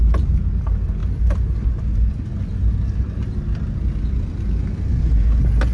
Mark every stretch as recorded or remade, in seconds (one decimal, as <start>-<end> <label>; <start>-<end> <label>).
0.0-5.7 recorded